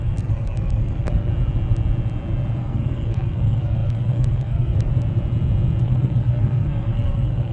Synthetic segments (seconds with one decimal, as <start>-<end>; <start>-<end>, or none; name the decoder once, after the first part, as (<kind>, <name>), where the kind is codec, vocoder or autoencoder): 0.0-1.3 (codec, SNAC); 2.6-4.9; 5.8-7.5